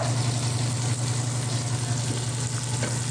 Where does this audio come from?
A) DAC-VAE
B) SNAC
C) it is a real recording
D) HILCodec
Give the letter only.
C